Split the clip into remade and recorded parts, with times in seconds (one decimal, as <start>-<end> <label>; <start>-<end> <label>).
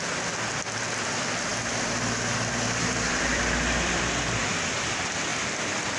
0.0-1.5 recorded; 1.5-4.5 remade; 4.5-6.0 recorded